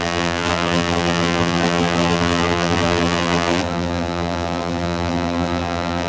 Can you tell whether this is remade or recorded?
remade